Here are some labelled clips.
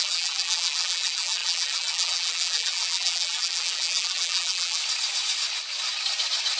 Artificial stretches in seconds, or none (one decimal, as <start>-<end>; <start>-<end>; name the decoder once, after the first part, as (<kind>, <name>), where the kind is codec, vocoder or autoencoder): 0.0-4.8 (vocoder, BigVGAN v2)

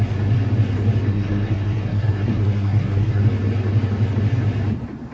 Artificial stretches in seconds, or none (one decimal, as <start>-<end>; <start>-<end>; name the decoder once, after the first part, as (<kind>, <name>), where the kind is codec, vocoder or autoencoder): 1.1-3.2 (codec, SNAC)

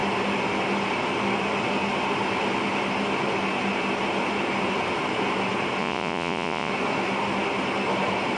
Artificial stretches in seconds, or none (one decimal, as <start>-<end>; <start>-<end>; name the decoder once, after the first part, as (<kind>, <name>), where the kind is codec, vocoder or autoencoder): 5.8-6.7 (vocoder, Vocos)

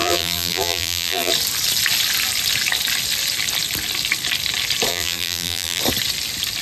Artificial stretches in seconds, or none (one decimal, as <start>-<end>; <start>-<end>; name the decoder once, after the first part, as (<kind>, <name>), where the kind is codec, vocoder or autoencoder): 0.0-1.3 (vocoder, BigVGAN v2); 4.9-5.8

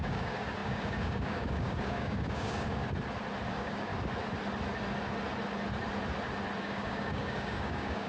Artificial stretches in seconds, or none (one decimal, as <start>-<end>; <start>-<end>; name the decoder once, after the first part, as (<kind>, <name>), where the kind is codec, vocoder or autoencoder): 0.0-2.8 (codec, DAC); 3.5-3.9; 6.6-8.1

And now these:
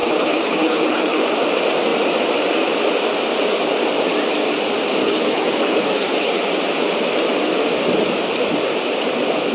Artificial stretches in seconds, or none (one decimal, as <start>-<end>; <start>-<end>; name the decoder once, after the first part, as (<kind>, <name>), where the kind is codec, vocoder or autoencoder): 0.0-1.4 (codec, HILCodec); 5.0-6.5